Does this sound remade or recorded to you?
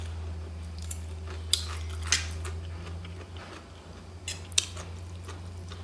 recorded